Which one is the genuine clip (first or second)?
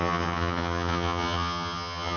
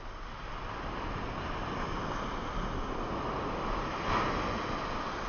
second